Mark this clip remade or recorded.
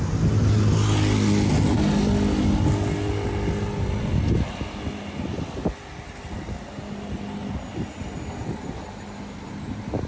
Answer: recorded